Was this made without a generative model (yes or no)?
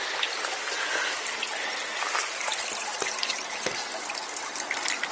yes